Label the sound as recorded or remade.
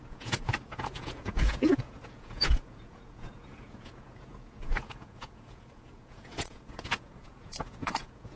remade